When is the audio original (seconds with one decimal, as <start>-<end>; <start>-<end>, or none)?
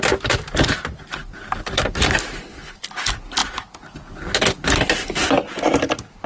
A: 0.0-6.3